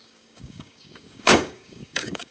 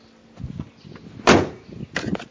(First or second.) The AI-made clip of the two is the first